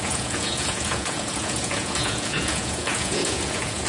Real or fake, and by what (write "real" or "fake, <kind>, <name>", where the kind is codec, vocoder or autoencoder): fake, vocoder, Vocos